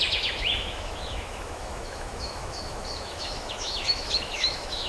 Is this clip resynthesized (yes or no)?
yes